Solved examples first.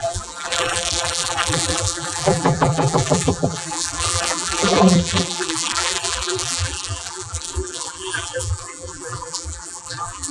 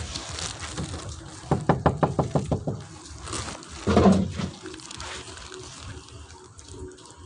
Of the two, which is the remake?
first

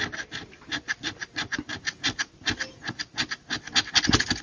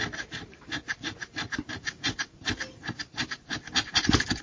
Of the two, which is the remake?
second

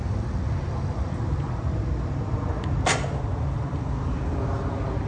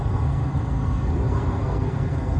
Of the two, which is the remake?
second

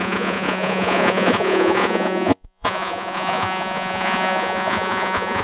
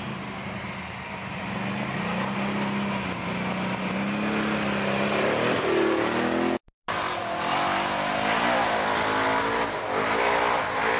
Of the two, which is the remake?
first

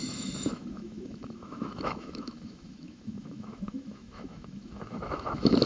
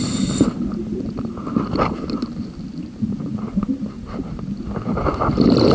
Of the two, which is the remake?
first